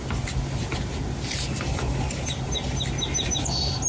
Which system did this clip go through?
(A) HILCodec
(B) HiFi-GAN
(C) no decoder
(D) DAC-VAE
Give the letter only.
C